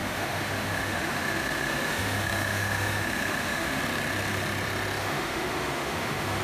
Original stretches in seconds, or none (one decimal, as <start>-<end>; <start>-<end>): 3.8-5.0